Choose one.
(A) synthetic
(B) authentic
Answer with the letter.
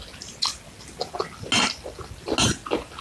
B